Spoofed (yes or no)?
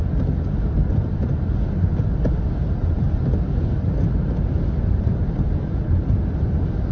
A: no